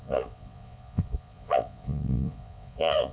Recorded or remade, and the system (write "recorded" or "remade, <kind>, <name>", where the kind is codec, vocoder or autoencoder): remade, vocoder, Vocos